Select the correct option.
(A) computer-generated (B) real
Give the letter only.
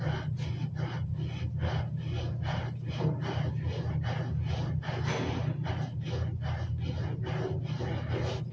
B